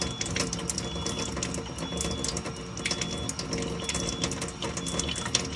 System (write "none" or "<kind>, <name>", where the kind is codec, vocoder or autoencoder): none